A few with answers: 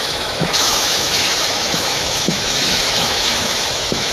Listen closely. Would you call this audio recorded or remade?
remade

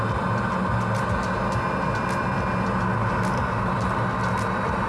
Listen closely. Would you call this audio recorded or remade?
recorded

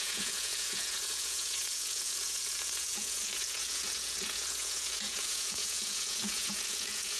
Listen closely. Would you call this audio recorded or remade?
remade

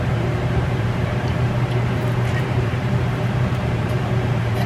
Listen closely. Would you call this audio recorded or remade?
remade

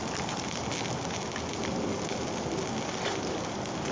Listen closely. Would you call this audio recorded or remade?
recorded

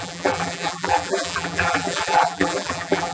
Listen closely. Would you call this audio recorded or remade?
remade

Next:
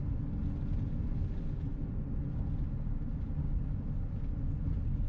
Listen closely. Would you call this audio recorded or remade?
recorded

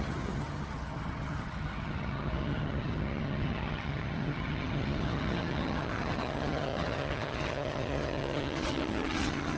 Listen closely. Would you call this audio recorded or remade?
remade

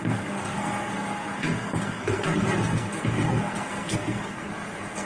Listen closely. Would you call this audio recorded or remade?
remade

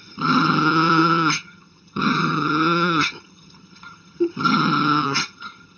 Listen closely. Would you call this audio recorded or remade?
remade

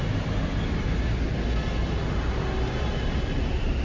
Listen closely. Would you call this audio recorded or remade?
recorded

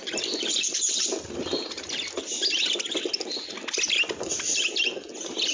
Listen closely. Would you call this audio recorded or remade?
recorded